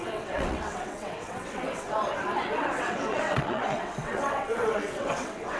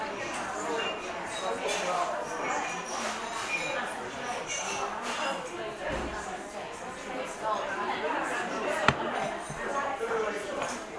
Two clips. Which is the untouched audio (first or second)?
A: second